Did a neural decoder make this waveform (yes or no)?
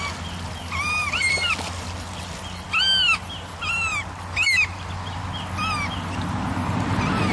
no